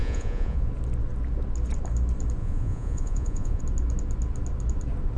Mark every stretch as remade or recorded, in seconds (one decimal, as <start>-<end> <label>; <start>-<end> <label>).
0.0-0.7 remade; 0.7-2.4 recorded; 2.4-3.6 remade; 3.6-5.2 recorded